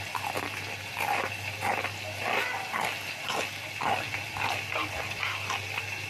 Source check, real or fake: real